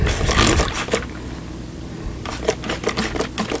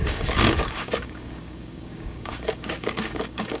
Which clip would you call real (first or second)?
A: first